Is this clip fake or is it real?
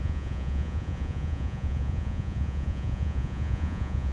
fake